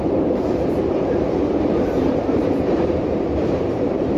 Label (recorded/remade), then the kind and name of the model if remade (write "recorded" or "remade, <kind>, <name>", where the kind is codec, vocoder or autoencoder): remade, vocoder, BigVGAN v2